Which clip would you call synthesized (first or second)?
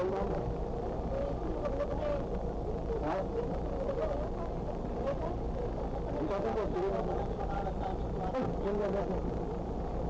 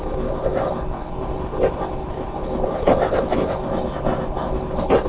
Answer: second